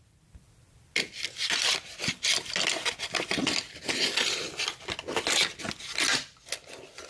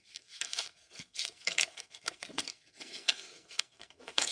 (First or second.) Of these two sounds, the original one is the first